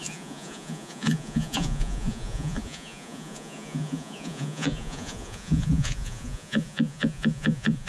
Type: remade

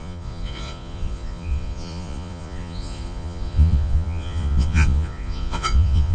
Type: remade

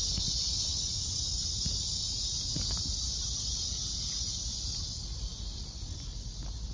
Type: recorded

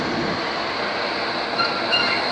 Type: recorded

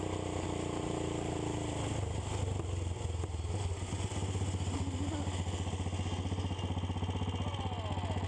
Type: recorded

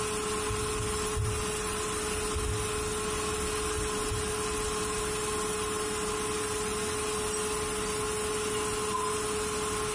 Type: recorded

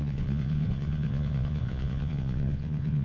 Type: remade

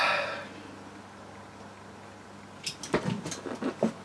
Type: recorded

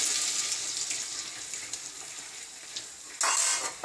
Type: recorded